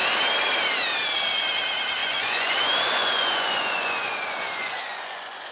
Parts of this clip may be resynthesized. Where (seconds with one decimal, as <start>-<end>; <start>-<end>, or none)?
2.0-5.5